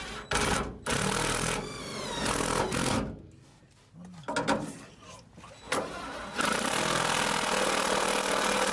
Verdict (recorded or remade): recorded